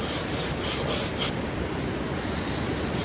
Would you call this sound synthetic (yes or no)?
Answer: no